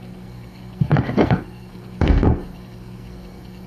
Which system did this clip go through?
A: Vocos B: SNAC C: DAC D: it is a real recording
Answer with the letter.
B